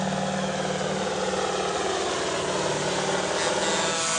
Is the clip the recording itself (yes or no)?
yes